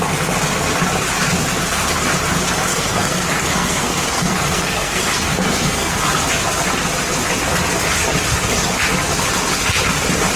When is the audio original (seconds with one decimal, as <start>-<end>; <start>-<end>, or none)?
0.0-2.7; 6.0-10.4